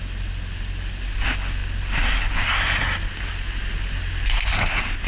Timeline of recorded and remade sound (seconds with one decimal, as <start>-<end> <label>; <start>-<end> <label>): 0.0-5.1 recorded